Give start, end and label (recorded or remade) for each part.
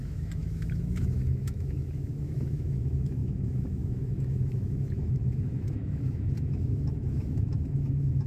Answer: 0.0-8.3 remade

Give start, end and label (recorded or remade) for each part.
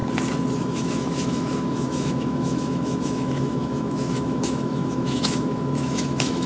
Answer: 0.0-0.6 recorded; 0.6-6.5 remade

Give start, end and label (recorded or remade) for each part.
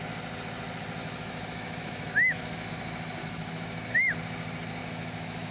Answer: 0.0-1.0 recorded; 1.0-2.7 remade; 2.7-3.2 recorded; 3.2-3.9 remade; 3.9-4.8 recorded; 4.8-5.5 remade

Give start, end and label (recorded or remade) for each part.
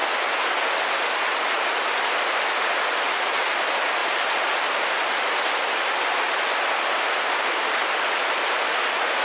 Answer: 0.0-9.2 recorded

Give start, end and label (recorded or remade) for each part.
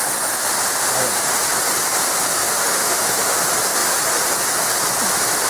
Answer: 0.0-2.4 recorded; 2.4-3.4 remade; 3.4-5.5 recorded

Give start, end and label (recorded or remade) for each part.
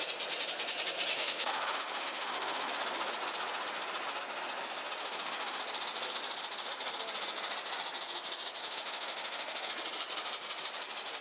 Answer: 0.0-1.2 recorded; 1.2-2.7 remade; 2.7-5.0 recorded; 5.0-5.6 remade; 5.6-8.6 recorded; 8.6-9.7 remade; 9.7-11.2 recorded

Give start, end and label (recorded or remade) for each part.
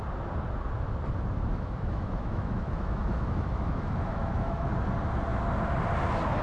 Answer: 0.0-1.5 recorded; 1.5-4.7 remade; 4.7-6.4 recorded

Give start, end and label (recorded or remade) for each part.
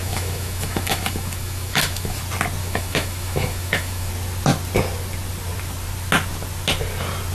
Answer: 0.0-2.2 remade; 2.2-2.6 recorded; 2.6-4.1 remade; 4.1-7.3 recorded